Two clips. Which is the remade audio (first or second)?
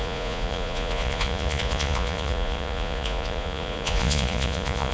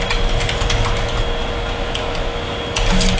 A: first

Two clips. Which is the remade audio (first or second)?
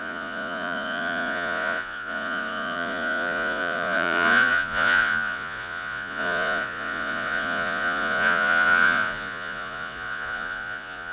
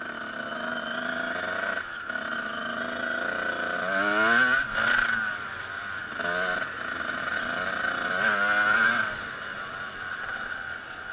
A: first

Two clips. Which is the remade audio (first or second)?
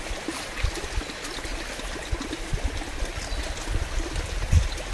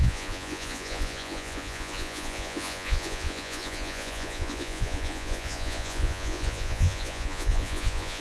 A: second